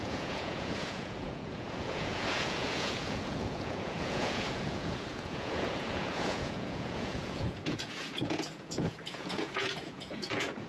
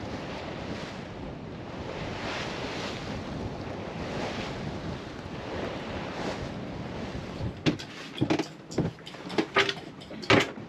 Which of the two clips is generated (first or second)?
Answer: first